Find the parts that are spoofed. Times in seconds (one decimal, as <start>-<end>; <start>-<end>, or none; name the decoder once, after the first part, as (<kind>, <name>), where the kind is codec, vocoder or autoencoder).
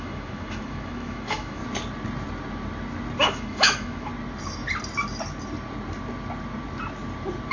0.0-1.6 (autoencoder, DAC-VAE); 3.2-4.1